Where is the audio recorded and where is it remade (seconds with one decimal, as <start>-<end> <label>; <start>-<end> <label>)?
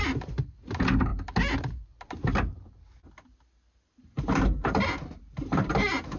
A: 0.0-6.2 recorded